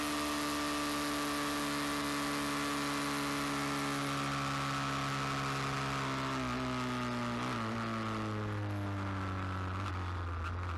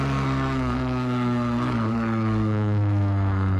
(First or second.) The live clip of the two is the first